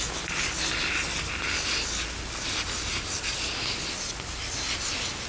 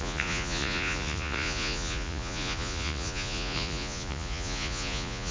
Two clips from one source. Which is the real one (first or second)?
first